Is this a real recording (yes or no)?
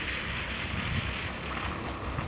yes